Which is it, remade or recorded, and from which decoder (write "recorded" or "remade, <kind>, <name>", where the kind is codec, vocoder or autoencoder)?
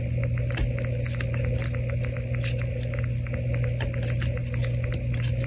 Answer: recorded